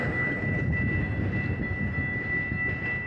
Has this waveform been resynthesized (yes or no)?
no